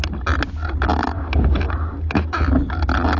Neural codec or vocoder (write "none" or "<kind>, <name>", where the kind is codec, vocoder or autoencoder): none